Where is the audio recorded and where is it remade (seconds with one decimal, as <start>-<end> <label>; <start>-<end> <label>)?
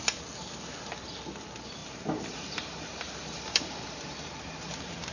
0.0-1.8 recorded; 1.8-5.1 remade